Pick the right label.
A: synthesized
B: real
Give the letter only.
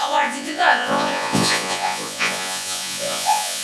A